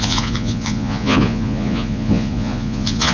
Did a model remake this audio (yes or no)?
yes